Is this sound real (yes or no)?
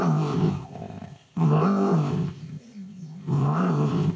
no